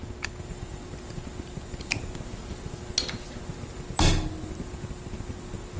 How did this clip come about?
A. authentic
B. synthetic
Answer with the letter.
A